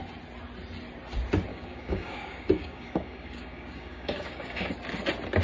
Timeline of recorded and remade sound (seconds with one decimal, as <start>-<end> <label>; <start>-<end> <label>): 0.0-1.5 recorded; 1.5-4.7 remade; 4.7-5.4 recorded